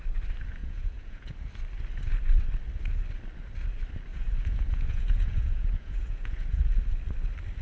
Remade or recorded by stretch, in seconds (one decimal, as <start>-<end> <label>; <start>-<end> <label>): 0.0-0.6 recorded; 0.6-1.3 remade; 1.3-4.1 recorded; 4.1-6.6 remade; 6.6-7.6 recorded